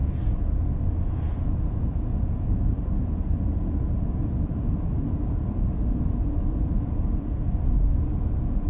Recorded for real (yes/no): no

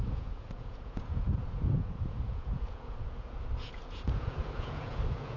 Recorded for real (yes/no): no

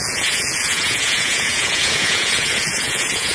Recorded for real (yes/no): no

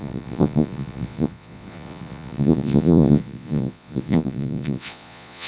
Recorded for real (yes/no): no